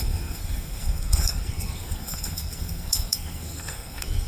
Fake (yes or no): yes